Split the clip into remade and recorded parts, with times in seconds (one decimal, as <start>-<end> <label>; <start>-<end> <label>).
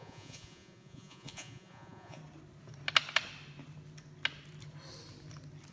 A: 0.0-2.2 remade; 2.2-5.7 recorded